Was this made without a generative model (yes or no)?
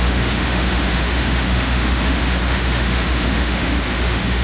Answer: no